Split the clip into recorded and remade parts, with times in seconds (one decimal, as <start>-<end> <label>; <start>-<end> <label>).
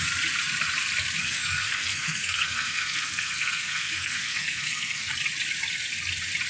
0.0-1.2 recorded; 1.2-5.1 remade; 5.1-6.5 recorded